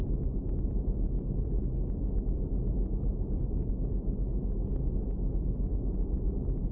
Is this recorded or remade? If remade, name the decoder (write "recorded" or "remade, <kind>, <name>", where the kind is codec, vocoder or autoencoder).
remade, autoencoder, DAC-VAE